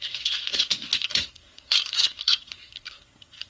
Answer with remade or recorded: remade